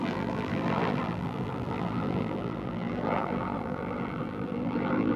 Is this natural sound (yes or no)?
no